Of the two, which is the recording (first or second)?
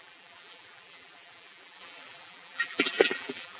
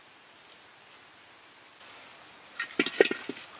second